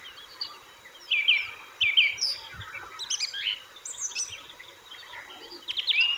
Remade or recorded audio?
recorded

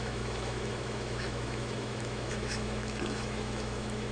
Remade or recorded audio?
remade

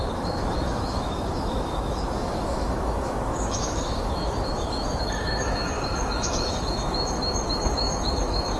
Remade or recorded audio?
remade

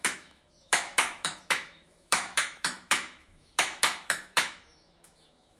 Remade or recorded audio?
remade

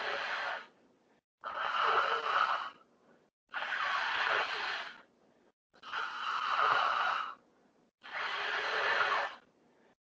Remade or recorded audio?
recorded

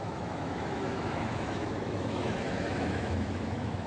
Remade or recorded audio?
remade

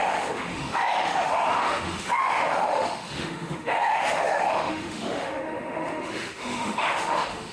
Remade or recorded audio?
remade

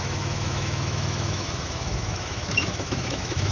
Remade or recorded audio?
remade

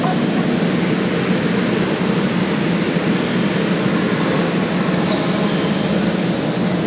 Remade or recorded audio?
recorded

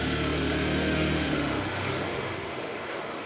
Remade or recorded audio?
remade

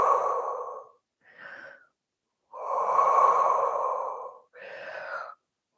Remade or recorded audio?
recorded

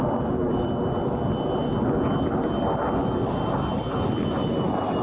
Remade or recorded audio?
recorded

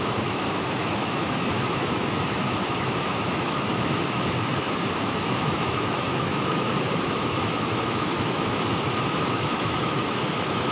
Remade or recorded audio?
remade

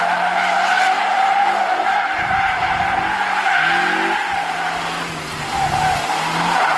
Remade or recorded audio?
recorded